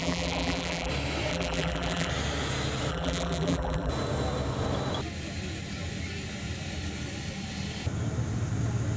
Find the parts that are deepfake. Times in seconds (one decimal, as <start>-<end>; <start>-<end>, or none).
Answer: 0.0-0.9; 1.3-2.1; 2.9-3.9